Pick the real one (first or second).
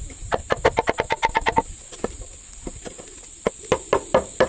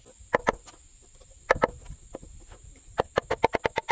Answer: second